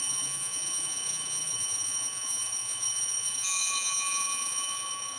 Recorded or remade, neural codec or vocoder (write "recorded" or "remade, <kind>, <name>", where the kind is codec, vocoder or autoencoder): remade, vocoder, Vocos